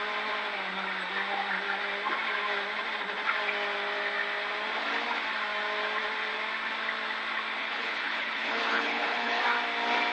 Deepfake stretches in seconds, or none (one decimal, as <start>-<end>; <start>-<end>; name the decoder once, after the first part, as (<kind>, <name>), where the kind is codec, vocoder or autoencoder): 7.6-9.4 (codec, HILCodec)